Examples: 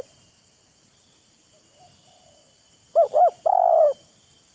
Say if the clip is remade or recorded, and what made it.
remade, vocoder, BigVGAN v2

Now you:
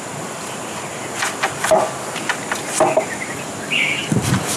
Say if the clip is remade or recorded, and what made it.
remade, vocoder, BigVGAN v2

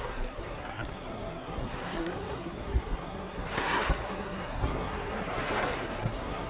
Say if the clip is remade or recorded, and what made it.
remade, codec, SNAC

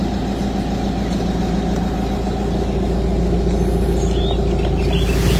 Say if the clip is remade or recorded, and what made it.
recorded